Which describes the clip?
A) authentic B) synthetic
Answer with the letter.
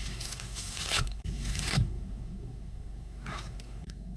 B